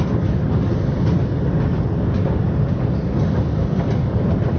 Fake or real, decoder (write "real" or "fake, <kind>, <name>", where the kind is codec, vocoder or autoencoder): real